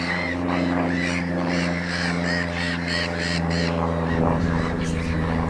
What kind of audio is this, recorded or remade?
remade